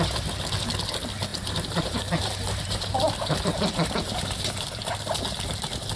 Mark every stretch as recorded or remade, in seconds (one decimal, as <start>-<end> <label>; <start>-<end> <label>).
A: 0.0-1.3 recorded; 1.3-4.9 remade; 4.9-6.0 recorded